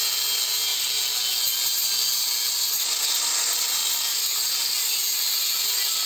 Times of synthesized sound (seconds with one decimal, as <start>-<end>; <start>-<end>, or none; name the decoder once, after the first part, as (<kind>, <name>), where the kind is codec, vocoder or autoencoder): none